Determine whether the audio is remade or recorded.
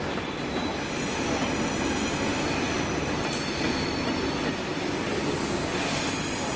recorded